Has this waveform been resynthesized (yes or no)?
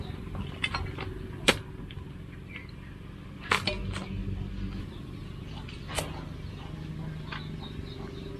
no